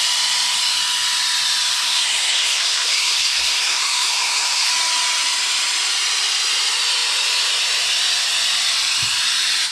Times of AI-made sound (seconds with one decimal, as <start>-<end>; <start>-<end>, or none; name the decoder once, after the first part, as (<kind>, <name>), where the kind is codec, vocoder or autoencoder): 1.7-4.7 (codec, SNAC)